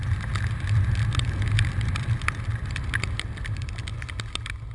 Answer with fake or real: real